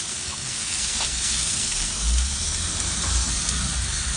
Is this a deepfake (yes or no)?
yes